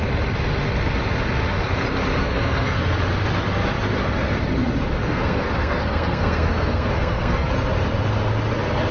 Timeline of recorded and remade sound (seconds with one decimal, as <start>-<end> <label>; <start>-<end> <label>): 0.0-2.2 recorded; 2.2-2.8 remade; 2.8-5.0 recorded; 5.0-7.5 remade; 7.5-8.9 recorded